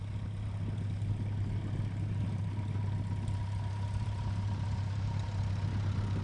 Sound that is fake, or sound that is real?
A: real